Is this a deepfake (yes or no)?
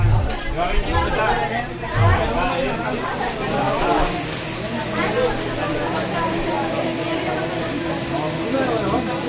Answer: no